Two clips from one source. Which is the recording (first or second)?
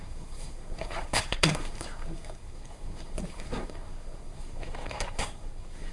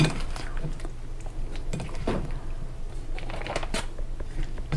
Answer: second